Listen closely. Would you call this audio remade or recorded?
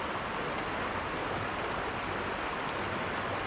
recorded